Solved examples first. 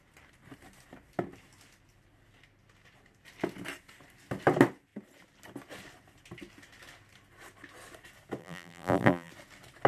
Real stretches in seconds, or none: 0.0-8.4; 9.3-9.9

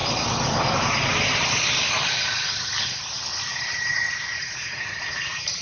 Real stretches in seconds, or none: 0.0-3.4

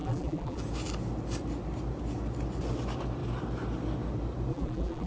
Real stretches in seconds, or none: 0.6-4.5

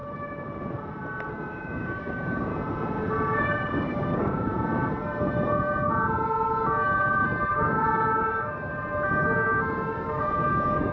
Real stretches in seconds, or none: 0.0-1.5; 2.5-3.4; 4.5-7.5; 8.7-9.2

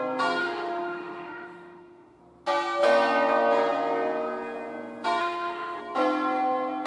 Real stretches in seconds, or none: 0.0-0.4; 2.2-5.2; 5.8-6.9

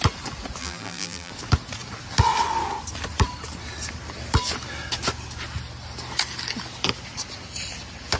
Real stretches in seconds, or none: 0.0-0.6; 1.3-8.2